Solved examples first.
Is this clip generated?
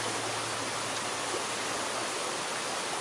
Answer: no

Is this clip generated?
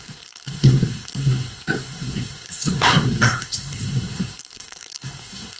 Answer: yes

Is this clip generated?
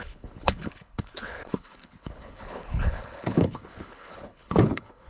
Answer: yes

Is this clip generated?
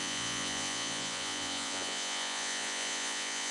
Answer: yes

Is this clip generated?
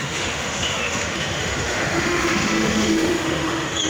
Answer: yes